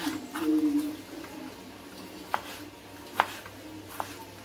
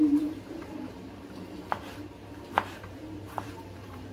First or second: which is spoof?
second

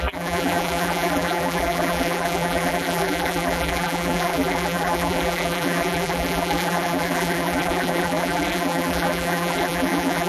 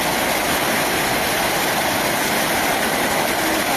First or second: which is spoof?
first